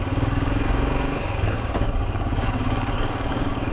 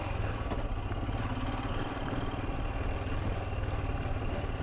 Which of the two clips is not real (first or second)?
first